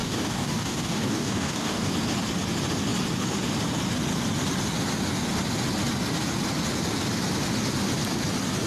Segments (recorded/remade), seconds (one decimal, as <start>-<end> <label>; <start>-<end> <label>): 0.0-1.9 remade; 1.9-8.7 recorded

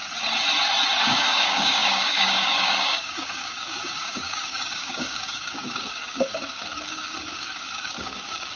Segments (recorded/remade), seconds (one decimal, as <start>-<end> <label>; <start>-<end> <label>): 0.0-1.0 recorded; 1.0-8.6 remade

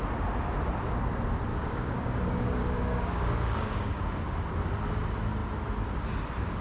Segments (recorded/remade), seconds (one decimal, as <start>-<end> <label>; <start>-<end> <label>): 0.0-1.5 recorded; 1.5-4.2 remade; 4.2-6.6 recorded

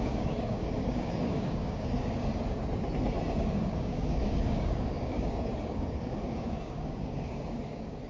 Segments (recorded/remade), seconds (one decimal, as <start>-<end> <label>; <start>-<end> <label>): 0.0-2.3 remade; 2.3-3.4 recorded; 3.4-8.1 remade